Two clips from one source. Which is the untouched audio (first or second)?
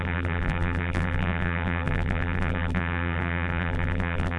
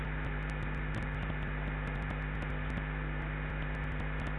second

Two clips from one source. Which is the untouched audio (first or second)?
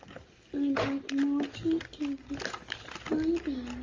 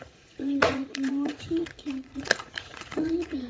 first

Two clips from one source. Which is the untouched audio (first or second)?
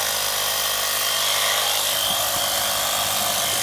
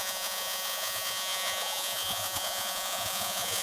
first